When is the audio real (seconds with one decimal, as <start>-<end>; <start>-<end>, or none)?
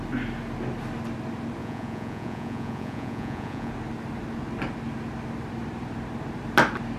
0.0-1.6; 3.7-7.0